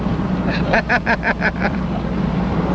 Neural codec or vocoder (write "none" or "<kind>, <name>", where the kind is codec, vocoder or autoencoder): vocoder, BigVGAN v2